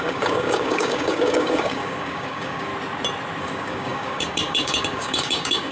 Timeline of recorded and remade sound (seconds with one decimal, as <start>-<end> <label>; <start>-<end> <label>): 0.0-2.7 remade; 2.7-3.4 recorded; 3.4-5.7 remade